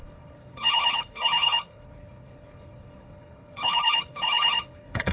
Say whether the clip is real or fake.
fake